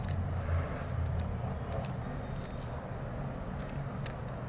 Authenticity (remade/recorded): recorded